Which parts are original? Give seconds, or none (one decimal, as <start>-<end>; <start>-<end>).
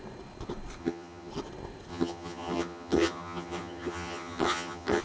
0.0-0.8; 1.3-1.9